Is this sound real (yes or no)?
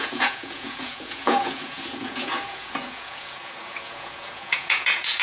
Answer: no